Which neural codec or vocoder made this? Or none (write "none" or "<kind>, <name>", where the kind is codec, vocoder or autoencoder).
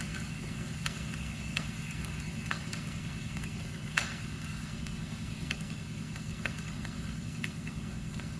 codec, SNAC